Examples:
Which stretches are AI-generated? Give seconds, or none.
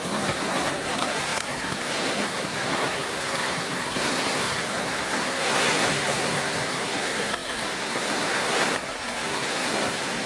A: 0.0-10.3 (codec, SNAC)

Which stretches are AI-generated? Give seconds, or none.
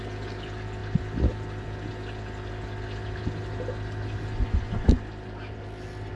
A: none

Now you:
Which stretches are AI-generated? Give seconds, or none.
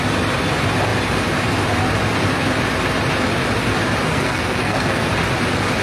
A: 4.1-5.1 (codec, SNAC)